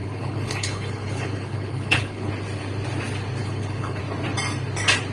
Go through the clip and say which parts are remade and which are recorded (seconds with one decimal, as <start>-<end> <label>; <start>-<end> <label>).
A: 0.0-2.3 remade; 2.3-3.4 recorded; 3.4-4.0 remade; 4.0-5.1 recorded